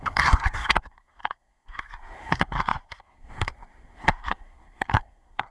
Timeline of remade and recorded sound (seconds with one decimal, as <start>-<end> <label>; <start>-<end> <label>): 0.0-5.5 remade